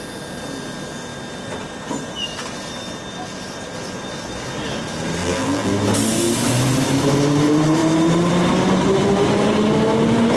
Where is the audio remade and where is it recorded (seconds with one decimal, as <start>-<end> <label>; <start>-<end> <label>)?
0.0-5.2 recorded; 5.2-5.7 remade; 5.7-10.4 recorded